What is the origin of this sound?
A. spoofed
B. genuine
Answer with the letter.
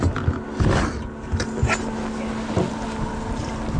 B